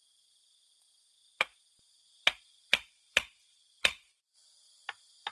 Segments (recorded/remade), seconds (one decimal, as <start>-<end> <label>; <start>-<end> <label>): 0.0-5.3 recorded